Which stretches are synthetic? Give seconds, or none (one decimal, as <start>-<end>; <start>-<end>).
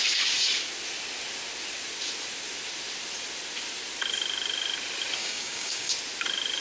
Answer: 5.2-5.9